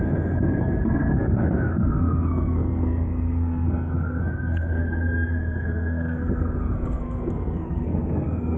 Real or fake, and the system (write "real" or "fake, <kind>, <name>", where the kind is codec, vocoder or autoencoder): fake, codec, SNAC